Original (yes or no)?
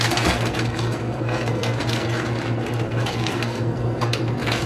no